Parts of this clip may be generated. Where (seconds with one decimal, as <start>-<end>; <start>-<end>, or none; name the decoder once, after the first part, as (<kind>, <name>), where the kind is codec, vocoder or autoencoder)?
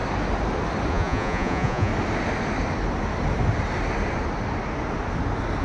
0.9-1.9 (vocoder, Vocos)